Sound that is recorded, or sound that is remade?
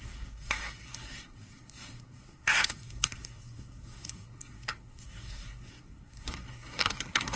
remade